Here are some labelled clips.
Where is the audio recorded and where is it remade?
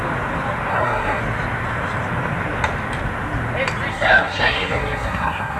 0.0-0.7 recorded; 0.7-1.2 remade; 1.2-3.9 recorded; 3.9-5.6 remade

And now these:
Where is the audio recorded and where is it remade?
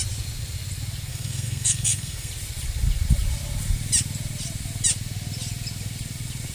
0.0-1.1 recorded; 1.1-2.3 remade; 2.3-6.5 recorded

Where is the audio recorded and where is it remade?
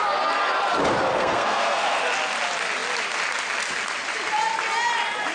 0.0-1.1 recorded; 1.1-2.0 remade; 2.0-5.3 recorded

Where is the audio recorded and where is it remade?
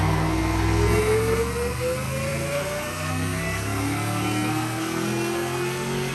0.0-6.1 remade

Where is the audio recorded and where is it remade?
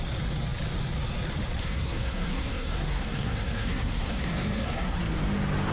0.0-1.6 recorded; 1.6-5.0 remade; 5.0-5.7 recorded